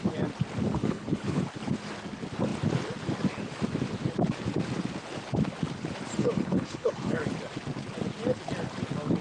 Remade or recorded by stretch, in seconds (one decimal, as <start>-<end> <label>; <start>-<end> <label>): 0.0-0.8 recorded; 0.8-1.4 remade; 1.4-6.2 recorded; 6.2-7.2 remade; 7.2-9.2 recorded